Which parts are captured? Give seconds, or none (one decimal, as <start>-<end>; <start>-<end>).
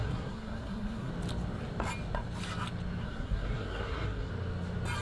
1.1-3.0; 4.3-5.0